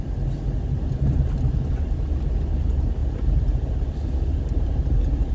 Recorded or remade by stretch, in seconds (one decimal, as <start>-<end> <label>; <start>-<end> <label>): 0.0-5.3 recorded